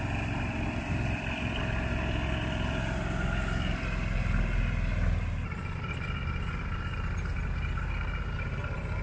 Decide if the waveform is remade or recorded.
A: recorded